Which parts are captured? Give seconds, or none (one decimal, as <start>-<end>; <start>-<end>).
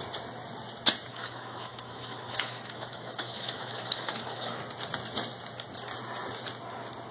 0.0-1.1; 4.6-7.1